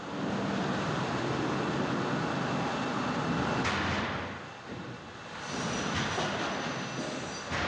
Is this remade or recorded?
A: recorded